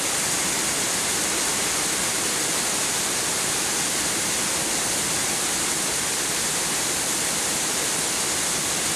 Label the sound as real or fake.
real